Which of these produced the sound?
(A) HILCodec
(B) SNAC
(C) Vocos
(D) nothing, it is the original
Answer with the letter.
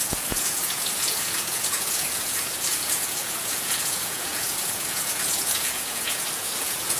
C